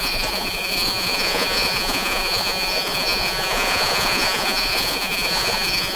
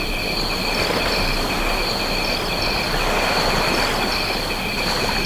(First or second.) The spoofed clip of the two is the first